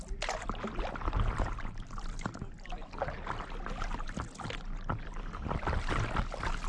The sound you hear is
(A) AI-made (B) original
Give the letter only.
B